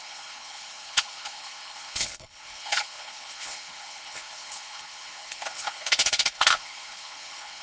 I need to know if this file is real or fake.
fake